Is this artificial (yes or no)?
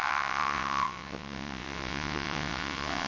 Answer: yes